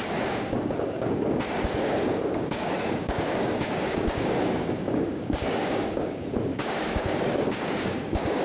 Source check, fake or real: fake